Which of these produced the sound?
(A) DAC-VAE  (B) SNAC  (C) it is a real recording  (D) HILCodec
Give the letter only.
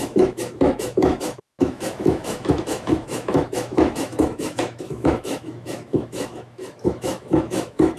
A